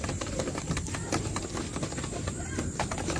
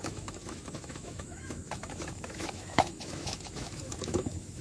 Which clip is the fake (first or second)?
second